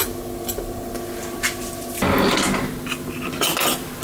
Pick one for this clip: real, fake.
real